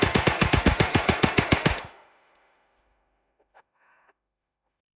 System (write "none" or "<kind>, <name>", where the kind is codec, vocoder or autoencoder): autoencoder, DAC-VAE